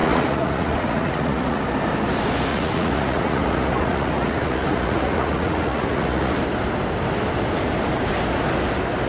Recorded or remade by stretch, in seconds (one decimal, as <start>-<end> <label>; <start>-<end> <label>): 0.0-1.6 remade; 1.6-2.5 recorded; 2.5-6.3 remade; 6.3-9.1 recorded